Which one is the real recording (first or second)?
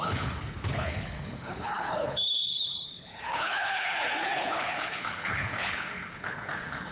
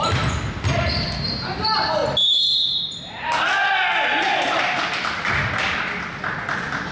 second